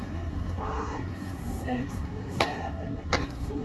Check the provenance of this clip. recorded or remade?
remade